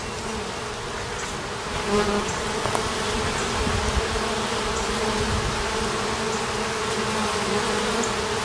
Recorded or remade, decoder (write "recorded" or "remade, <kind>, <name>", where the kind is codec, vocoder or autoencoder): recorded